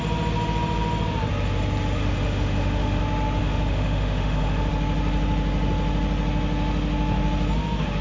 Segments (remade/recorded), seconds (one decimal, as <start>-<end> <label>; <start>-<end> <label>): 0.0-2.0 recorded; 2.0-3.0 remade; 3.0-3.4 recorded; 3.4-4.7 remade; 4.7-8.0 recorded